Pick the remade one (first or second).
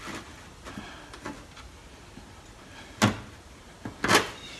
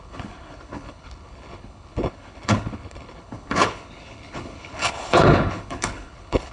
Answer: second